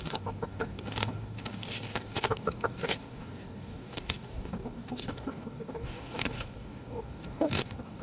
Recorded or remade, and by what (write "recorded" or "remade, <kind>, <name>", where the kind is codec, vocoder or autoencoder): remade, codec, DAC